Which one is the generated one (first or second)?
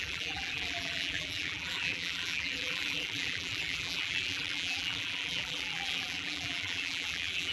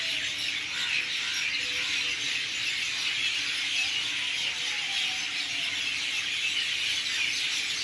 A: first